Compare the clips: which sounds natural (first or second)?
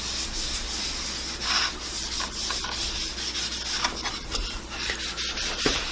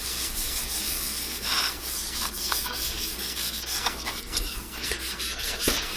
first